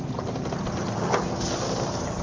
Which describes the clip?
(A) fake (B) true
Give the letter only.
B